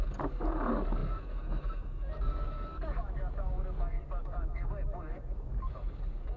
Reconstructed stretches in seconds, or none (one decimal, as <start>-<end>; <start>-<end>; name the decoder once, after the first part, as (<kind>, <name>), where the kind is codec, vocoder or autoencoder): 0.0-6.4 (codec, DAC)